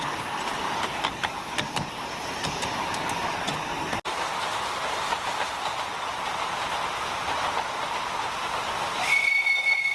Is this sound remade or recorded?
recorded